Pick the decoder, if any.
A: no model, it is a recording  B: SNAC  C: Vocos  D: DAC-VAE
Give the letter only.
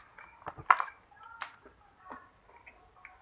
A